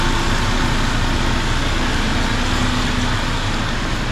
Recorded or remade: recorded